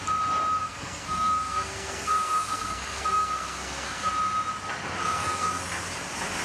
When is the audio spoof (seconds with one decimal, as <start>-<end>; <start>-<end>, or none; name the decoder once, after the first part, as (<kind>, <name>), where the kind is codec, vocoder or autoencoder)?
0.6-4.1 (codec, SNAC); 5.0-5.6